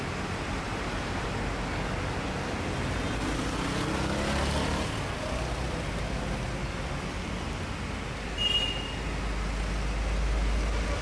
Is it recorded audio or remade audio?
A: recorded